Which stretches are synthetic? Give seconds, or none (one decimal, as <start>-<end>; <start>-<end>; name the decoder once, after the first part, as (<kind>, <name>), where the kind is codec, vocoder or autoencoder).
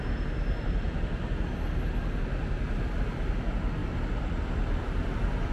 none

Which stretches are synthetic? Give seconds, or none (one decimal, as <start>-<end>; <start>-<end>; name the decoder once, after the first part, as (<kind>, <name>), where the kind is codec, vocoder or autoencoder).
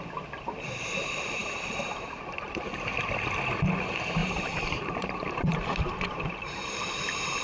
1.4-2.6 (vocoder, BigVGAN v2); 4.2-7.0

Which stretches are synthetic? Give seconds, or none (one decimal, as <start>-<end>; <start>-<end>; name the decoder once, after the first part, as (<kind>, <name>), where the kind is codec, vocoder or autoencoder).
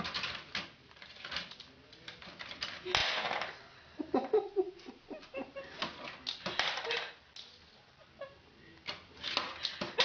none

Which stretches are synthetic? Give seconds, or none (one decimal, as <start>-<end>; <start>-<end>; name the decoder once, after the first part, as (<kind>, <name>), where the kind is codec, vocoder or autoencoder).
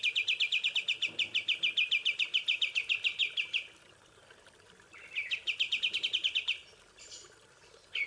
0.0-8.1 (vocoder, BigVGAN v2)